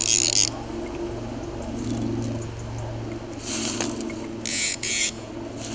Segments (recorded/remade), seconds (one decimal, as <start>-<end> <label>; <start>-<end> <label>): 0.0-4.5 recorded; 4.5-5.3 remade; 5.3-5.7 recorded